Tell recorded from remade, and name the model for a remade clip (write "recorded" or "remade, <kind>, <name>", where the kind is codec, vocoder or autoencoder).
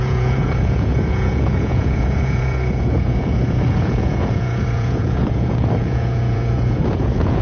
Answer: remade, vocoder, Vocos